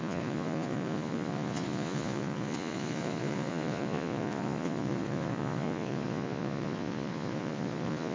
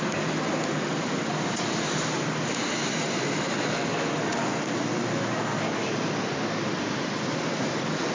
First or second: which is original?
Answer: second